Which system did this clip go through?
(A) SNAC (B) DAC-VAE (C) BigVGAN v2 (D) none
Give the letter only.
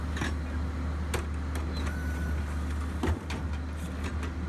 D